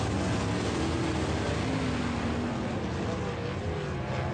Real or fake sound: real